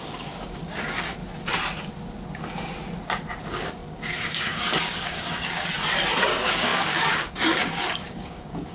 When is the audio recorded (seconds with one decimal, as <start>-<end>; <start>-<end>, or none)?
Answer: 1.2-3.4; 5.7-6.2

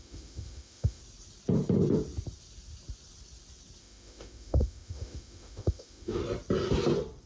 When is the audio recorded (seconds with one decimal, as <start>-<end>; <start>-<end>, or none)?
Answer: 1.0-3.8; 6.2-7.3

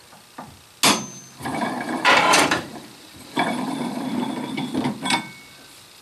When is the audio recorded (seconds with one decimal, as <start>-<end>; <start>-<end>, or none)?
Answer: 0.0-1.5; 4.3-6.0

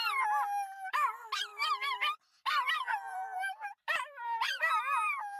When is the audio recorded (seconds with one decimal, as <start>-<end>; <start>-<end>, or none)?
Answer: 0.0-1.5; 4.7-5.4

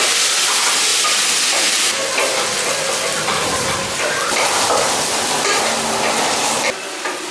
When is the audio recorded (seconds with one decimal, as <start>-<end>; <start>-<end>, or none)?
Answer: 0.0-7.3